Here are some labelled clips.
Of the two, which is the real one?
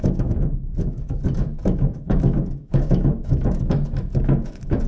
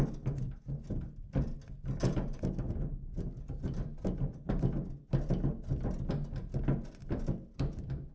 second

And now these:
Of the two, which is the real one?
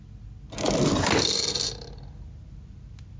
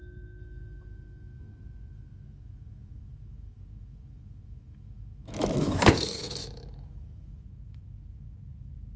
first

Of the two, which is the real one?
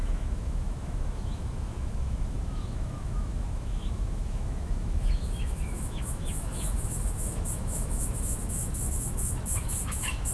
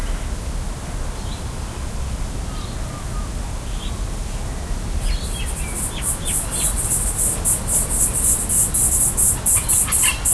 second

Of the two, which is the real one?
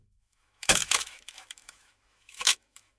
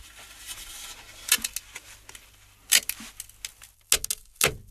second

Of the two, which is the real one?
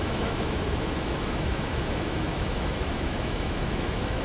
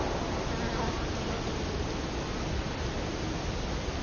second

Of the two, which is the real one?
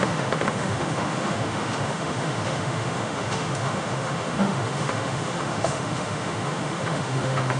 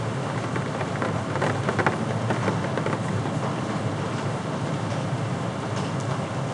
second